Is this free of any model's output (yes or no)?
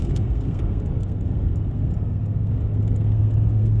no